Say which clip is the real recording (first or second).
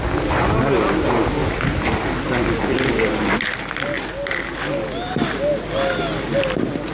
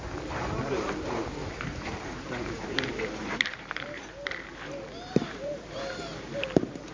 first